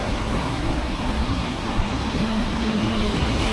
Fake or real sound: fake